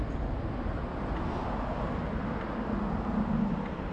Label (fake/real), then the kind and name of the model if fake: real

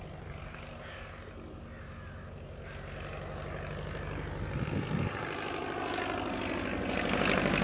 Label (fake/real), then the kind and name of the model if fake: real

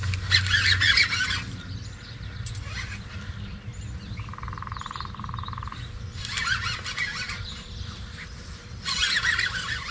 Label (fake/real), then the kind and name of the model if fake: real